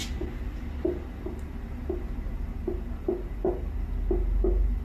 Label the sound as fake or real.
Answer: real